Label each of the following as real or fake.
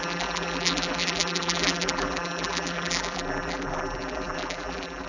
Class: fake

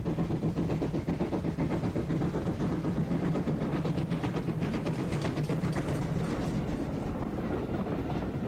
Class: real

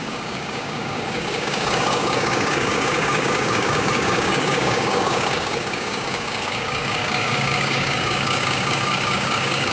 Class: fake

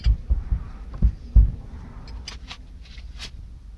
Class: real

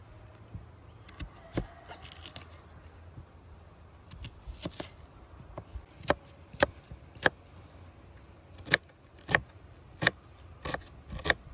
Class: real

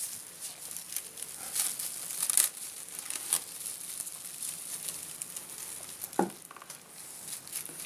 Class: real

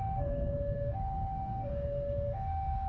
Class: fake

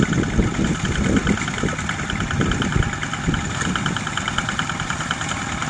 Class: real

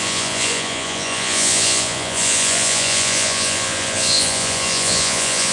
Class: fake